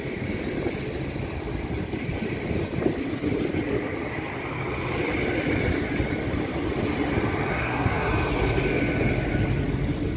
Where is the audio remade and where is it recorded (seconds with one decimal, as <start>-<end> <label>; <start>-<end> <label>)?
0.0-7.5 recorded; 7.5-8.1 remade; 8.1-10.2 recorded